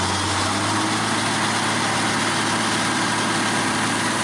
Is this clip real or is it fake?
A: real